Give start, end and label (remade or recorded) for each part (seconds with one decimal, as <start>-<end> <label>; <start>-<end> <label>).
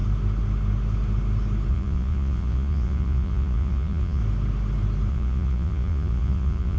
0.0-1.7 recorded; 1.7-4.2 remade; 4.2-5.1 recorded; 5.1-6.8 remade